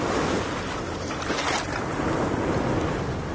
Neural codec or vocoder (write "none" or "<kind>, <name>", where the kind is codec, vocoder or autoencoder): none